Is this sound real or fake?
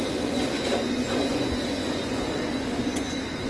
fake